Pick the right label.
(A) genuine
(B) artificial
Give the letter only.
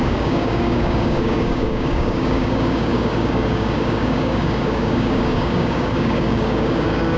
B